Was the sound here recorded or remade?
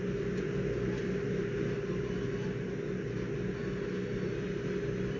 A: recorded